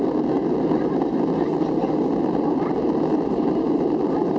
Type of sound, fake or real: real